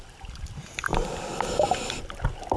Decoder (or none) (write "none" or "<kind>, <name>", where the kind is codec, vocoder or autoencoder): none